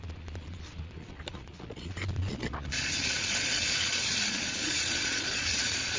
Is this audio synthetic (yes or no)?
yes